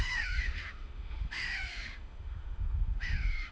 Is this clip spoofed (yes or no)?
yes